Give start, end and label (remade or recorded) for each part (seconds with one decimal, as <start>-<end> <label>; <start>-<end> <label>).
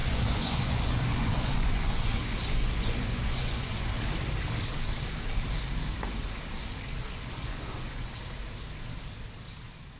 0.0-3.9 remade; 3.9-7.0 recorded; 7.0-8.1 remade; 8.1-10.0 recorded